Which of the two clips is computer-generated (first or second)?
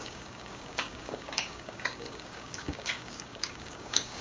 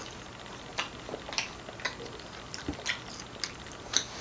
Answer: first